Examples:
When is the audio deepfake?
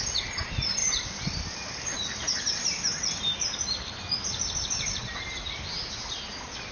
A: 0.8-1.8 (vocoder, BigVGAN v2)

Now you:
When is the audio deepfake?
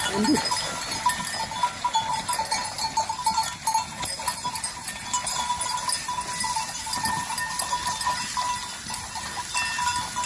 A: none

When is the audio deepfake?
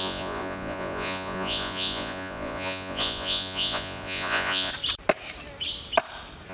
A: 0.0-4.7 (vocoder, Vocos)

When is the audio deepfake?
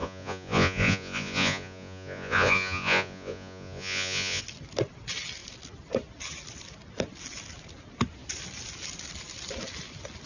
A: 0.0-4.4 (vocoder, Vocos)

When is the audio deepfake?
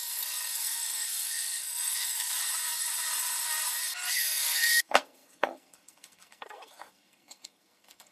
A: 0.0-2.4 (codec, SNAC); 4.1-8.1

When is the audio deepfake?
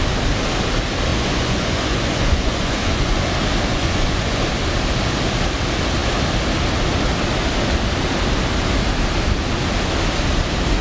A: 1.1-3.2 (vocoder, Vocos); 3.7-4.5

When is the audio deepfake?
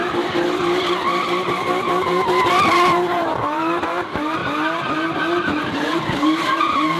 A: 3.1-4.4 (vocoder, BigVGAN v2); 5.6-7.0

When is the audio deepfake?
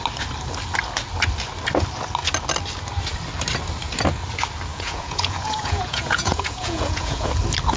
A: 4.7-7.3 (vocoder, Vocos)